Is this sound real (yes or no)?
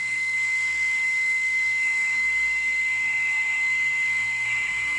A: no